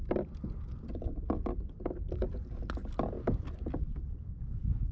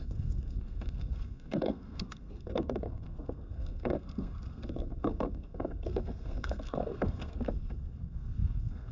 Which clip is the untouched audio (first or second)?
first